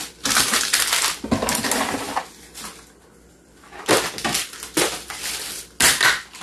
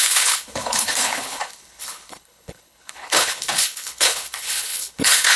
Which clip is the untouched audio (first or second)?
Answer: first